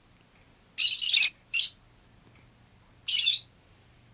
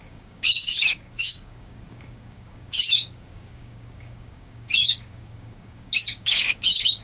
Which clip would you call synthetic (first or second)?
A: second